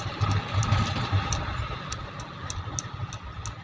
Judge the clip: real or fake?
real